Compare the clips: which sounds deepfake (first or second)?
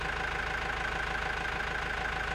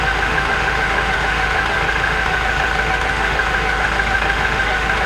second